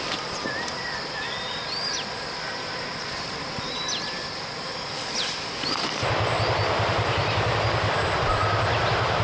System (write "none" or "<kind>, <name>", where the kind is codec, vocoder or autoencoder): vocoder, BigVGAN v2